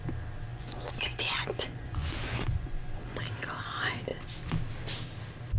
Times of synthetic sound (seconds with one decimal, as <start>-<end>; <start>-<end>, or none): 0.5-3.2

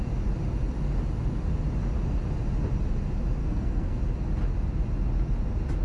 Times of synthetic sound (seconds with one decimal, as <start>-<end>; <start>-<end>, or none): 3.4-4.0

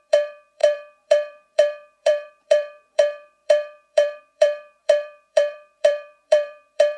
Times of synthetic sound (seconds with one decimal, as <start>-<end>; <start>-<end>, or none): 0.0-7.0

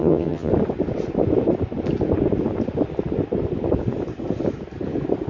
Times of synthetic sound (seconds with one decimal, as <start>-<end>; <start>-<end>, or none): 0.0-0.5

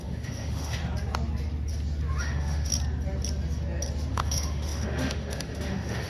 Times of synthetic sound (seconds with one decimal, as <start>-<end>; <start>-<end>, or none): 0.0-0.8; 2.2-2.7; 4.1-6.1

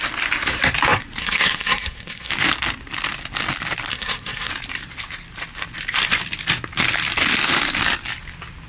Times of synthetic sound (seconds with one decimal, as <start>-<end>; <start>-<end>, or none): 1.2-2.3; 3.9-4.5

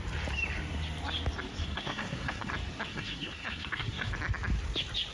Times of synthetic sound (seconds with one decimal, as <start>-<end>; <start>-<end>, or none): 1.6-2.5; 2.9-4.1

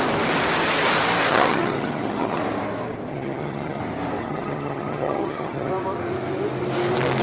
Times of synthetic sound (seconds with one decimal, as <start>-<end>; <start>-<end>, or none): 1.3-2.4; 3.1-3.8; 4.2-5.7